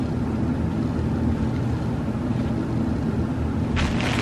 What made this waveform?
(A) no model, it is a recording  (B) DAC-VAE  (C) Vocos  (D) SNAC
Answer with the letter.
A